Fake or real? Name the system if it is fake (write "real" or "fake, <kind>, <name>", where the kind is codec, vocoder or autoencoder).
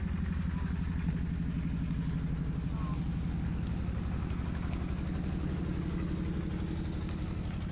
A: real